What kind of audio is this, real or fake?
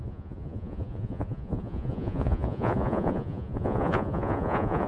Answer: fake